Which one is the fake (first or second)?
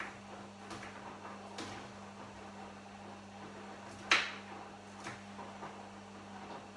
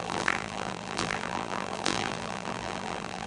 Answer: second